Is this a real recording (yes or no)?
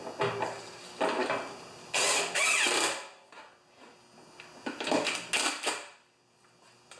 yes